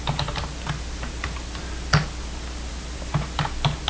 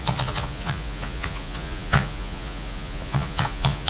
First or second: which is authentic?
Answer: first